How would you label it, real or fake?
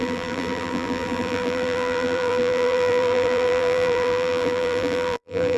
fake